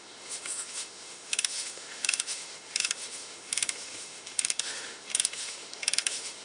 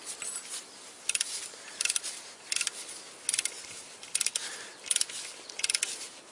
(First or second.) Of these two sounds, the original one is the second